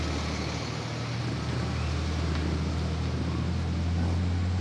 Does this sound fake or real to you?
real